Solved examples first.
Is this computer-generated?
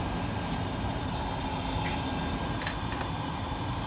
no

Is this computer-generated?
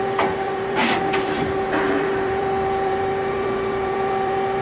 yes